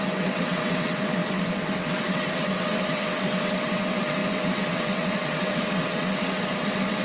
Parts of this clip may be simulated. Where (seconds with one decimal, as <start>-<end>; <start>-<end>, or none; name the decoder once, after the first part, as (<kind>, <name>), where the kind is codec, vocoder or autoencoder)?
0.0-7.0 (vocoder, WaveNeXt)